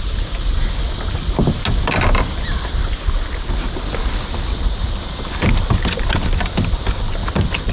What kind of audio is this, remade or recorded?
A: recorded